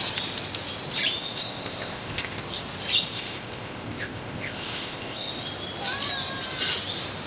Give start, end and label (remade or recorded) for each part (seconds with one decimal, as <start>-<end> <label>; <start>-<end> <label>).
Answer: 0.0-1.2 recorded; 1.2-2.4 remade; 2.4-3.1 recorded; 3.1-5.3 remade; 5.3-7.3 recorded